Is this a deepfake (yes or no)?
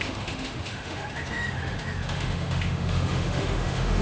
yes